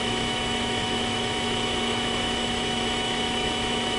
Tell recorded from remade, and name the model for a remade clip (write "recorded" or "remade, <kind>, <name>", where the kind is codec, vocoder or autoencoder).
remade, autoencoder, DAC-VAE